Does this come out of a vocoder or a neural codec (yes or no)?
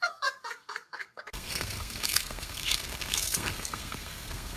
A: yes